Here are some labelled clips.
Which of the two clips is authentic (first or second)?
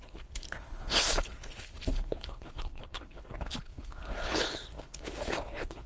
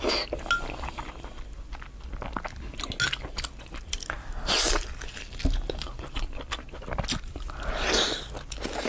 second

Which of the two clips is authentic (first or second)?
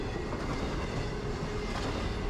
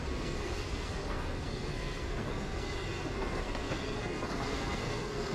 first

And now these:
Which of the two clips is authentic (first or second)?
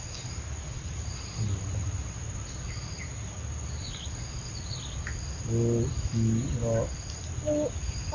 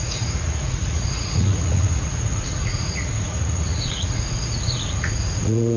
first